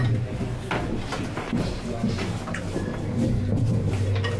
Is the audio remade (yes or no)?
no